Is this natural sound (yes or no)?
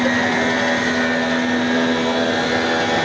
yes